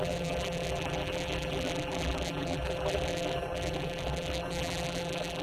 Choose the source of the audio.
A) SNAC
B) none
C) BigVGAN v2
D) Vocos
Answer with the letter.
C